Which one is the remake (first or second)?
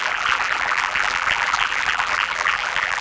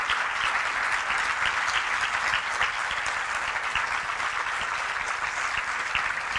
first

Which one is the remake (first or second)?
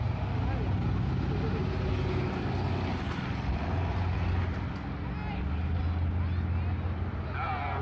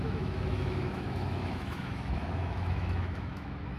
second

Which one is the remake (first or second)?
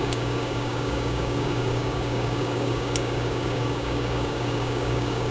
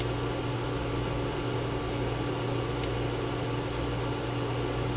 first